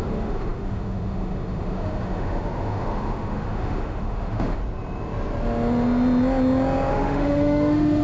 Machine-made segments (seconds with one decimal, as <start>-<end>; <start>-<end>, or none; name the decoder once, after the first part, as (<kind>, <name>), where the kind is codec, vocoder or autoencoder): 0.0-4.6 (autoencoder, DAC-VAE); 6.9-8.0